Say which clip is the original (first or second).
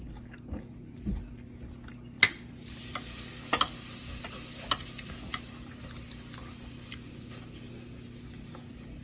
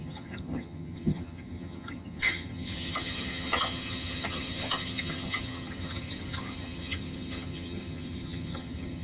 first